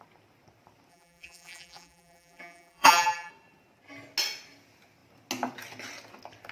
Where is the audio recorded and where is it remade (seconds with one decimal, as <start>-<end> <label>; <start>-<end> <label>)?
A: 0.0-0.9 recorded; 0.9-3.3 remade; 3.3-6.5 recorded